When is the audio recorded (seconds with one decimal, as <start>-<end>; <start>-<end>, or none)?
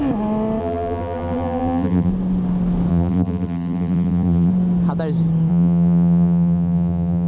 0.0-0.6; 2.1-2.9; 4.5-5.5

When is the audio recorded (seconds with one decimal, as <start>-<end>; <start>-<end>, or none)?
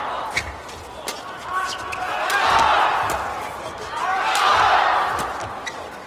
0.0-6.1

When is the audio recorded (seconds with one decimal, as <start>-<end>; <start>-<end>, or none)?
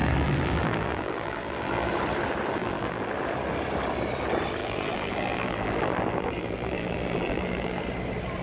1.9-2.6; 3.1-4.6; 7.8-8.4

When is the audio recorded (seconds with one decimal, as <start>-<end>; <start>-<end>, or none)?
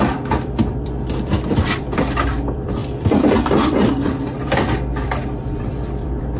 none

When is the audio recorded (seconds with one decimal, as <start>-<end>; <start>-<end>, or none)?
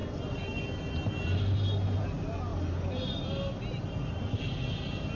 0.0-5.1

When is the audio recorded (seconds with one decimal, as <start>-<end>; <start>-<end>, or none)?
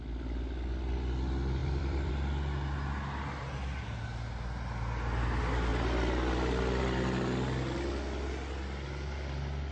0.0-1.6; 2.1-9.7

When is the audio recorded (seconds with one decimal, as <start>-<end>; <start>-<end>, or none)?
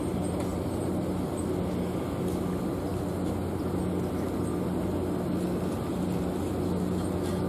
0.0-0.5; 1.3-7.5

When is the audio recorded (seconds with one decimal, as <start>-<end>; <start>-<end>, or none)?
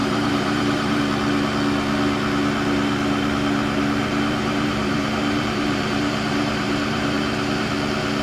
1.0-4.0; 7.7-8.2